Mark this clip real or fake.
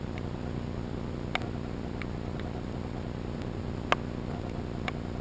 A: real